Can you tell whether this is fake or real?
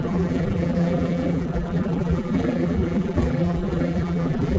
fake